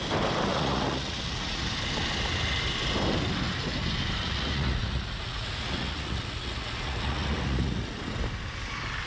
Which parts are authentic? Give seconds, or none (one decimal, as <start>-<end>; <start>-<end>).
0.0-0.5; 1.6-4.2; 8.0-9.1